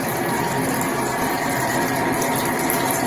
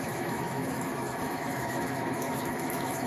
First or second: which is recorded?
first